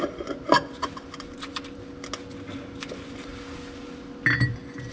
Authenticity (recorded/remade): recorded